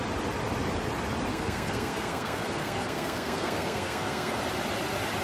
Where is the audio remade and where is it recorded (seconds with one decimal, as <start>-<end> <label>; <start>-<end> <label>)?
0.0-1.3 recorded; 1.3-4.4 remade; 4.4-5.2 recorded